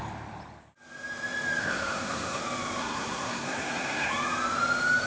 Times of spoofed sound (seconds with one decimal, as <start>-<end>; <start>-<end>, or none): 1.6-2.4; 2.8-4.1